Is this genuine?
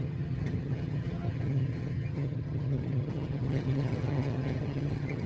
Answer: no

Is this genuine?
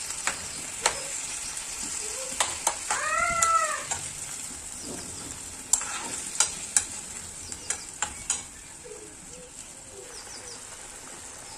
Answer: yes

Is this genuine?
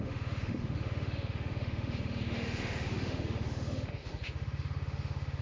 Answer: no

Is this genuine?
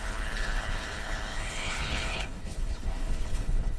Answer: no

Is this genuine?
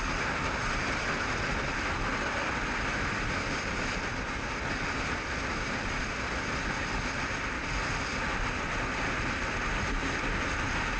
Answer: yes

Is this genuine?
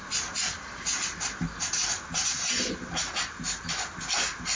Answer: yes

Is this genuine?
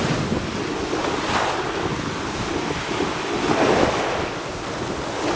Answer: yes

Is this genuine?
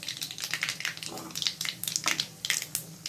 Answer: yes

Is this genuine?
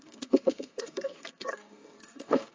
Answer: no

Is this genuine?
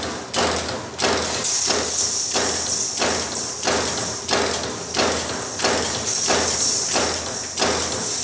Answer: yes